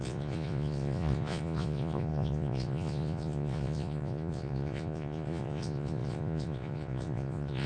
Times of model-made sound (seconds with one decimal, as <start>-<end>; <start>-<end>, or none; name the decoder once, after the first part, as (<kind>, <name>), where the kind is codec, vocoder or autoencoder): 0.0-7.7 (vocoder, Vocos)